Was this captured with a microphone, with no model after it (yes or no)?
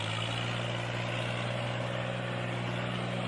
yes